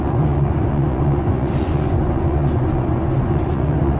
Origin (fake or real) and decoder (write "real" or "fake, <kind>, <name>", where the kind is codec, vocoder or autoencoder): fake, vocoder, Vocos